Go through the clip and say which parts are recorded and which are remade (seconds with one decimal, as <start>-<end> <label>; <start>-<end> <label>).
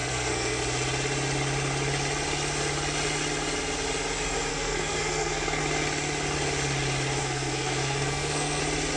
0.0-0.6 remade; 0.6-4.5 recorded; 4.5-5.6 remade; 5.6-7.2 recorded; 7.2-8.6 remade; 8.6-9.0 recorded